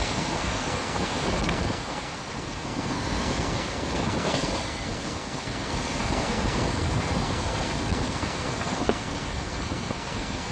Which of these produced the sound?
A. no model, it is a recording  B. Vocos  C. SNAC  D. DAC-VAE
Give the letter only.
C